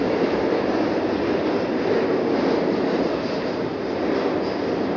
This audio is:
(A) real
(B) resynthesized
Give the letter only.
A